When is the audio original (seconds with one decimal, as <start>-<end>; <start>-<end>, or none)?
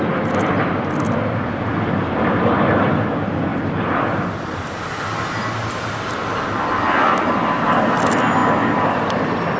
0.0-8.4; 9.1-9.6